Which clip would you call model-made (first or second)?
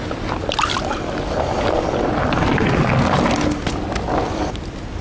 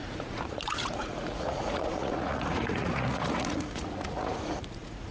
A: second